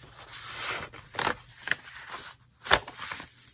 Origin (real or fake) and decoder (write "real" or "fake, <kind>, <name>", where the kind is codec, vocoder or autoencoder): real